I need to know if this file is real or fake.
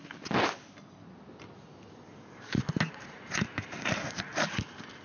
real